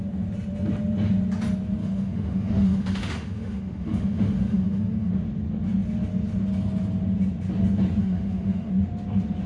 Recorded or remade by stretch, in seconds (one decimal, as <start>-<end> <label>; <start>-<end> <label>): 0.0-1.8 recorded; 1.8-5.1 remade; 5.1-8.0 recorded; 8.0-8.7 remade; 8.7-9.5 recorded

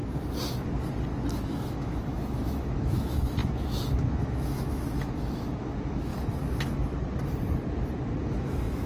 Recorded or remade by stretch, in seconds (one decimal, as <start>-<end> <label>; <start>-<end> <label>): 0.0-1.3 recorded; 1.3-6.1 remade; 6.1-8.2 recorded; 8.2-8.9 remade

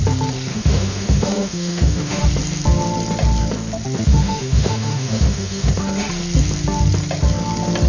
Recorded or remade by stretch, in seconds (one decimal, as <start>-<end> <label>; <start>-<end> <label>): 0.0-0.5 recorded; 0.5-2.2 remade; 2.2-4.1 recorded; 4.1-5.7 remade; 5.7-7.9 recorded

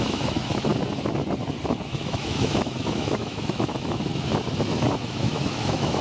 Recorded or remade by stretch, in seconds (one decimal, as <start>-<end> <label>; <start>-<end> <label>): 0.0-0.7 remade; 0.7-1.9 recorded; 1.9-4.1 remade; 4.1-5.1 recorded; 5.1-6.0 remade

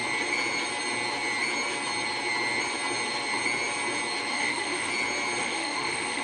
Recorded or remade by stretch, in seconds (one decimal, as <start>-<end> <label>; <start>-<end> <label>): 0.0-4.3 recorded; 4.3-4.9 remade; 4.9-5.4 recorded; 5.4-6.2 remade